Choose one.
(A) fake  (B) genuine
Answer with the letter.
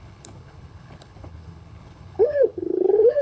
A